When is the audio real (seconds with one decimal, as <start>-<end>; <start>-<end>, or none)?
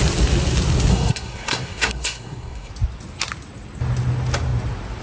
0.0-0.9; 2.7-5.0